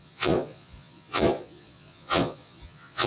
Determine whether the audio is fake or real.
fake